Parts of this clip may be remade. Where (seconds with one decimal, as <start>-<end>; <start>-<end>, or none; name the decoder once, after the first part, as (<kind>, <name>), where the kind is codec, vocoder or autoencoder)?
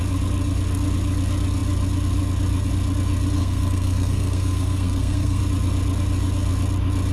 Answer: 3.4-5.4 (codec, SNAC)